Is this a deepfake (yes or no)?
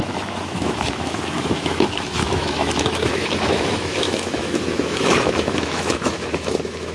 yes